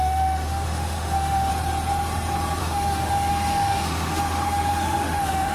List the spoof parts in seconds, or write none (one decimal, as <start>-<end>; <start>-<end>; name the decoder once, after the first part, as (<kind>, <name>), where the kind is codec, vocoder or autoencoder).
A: 0.0-1.5 (autoencoder, DAC-VAE); 2.6-5.5